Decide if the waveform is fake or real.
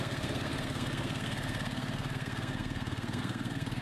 fake